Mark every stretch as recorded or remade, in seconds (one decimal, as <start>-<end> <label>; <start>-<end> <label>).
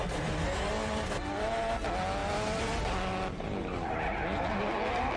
0.0-5.2 recorded